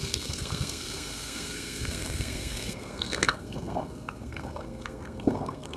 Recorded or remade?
remade